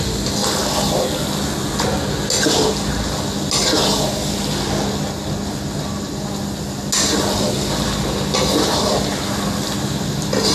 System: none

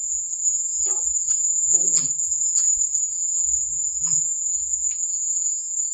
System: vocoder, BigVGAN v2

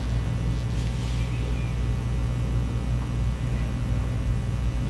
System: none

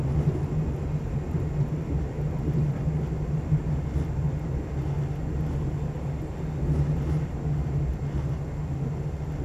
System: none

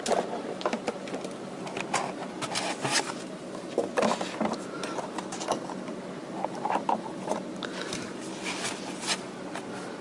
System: none